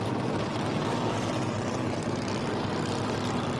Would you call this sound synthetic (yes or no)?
no